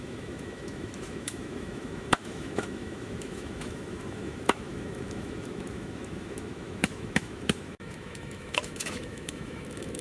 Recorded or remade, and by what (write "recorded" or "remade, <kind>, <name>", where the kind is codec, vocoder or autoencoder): remade, autoencoder, DAC-VAE